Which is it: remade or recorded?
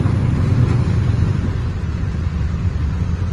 remade